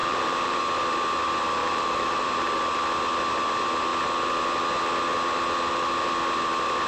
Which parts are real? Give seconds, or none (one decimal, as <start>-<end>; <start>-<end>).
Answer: 0.6-1.6; 2.5-6.9